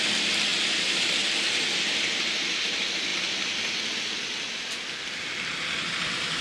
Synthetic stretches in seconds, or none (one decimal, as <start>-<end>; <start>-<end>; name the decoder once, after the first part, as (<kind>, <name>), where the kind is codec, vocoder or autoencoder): none